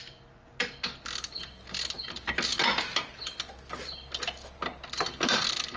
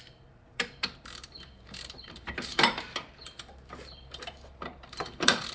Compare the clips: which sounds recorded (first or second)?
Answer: first